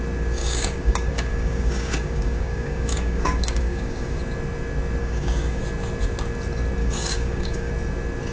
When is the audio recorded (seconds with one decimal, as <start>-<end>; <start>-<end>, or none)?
0.0-0.4; 4.2-5.0; 5.6-6.8; 7.7-8.3